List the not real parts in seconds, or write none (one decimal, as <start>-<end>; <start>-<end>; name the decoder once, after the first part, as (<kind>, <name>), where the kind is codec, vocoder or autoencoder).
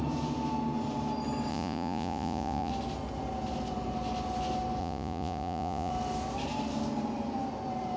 1.5-2.7 (vocoder, Vocos); 4.8-5.9